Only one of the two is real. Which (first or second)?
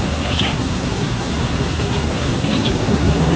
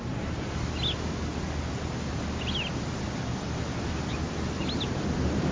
second